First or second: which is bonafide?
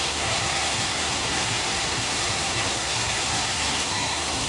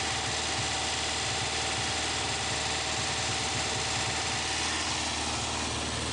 second